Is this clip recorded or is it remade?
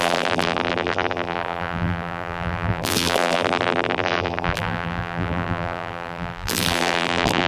remade